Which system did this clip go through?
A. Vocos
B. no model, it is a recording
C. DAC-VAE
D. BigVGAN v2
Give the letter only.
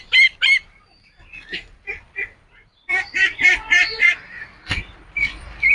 D